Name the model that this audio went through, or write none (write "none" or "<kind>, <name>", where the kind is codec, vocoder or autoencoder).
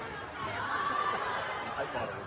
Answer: none